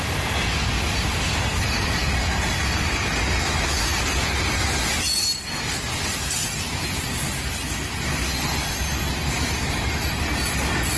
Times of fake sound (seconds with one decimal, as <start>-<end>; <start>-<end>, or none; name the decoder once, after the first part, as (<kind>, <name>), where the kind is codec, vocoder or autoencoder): none